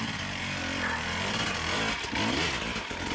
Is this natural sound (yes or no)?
yes